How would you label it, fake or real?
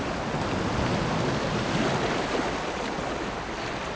real